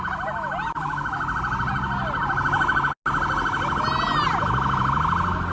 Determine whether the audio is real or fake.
real